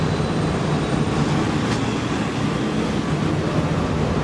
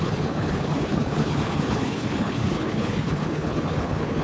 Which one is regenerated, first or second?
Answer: second